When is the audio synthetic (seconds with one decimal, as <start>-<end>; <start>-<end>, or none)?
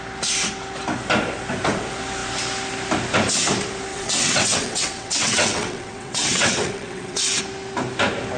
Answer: 3.9-7.4